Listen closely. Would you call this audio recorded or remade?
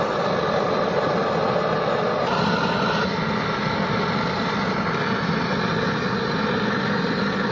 remade